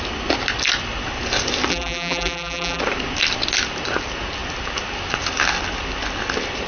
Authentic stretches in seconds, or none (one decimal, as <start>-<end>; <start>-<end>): 0.0-1.7; 2.8-6.7

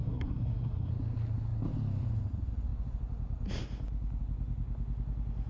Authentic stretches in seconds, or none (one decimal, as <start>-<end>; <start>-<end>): 0.9-5.5

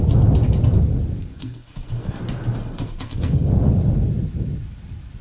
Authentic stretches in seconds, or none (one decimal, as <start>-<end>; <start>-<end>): 0.0-1.3; 2.2-2.6; 3.5-5.2